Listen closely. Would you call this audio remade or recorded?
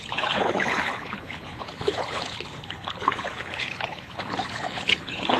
remade